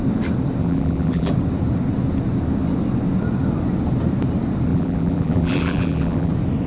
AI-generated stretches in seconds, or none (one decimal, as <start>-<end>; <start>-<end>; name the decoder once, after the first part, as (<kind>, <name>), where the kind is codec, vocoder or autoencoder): 0.6-1.3 (vocoder, BigVGAN v2); 4.7-6.3